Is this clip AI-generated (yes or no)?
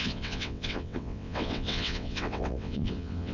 yes